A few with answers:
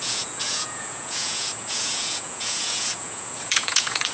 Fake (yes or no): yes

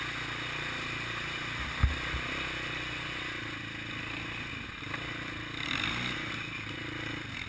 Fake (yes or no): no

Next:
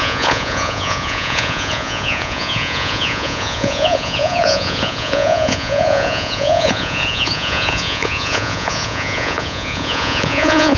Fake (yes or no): yes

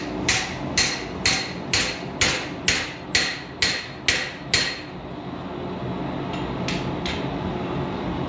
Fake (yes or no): no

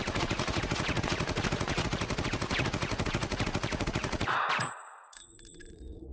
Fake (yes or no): yes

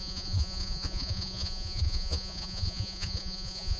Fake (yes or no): yes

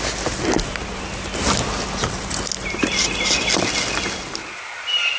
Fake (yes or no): no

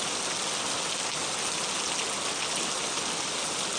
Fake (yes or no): no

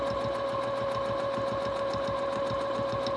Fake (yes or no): no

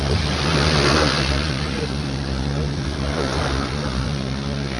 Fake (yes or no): yes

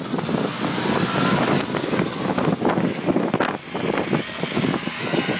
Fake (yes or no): no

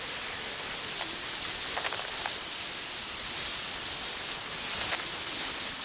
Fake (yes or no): no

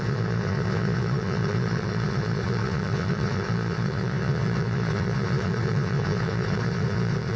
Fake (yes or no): yes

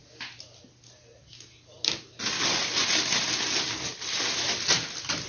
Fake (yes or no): no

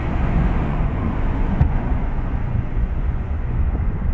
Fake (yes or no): yes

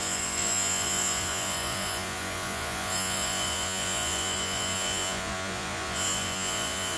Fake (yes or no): yes